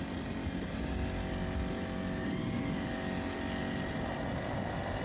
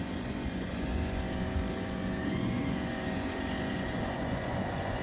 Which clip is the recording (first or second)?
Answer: first